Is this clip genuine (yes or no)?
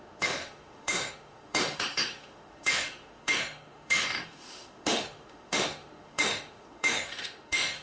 no